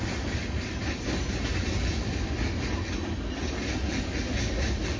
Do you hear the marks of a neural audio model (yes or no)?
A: no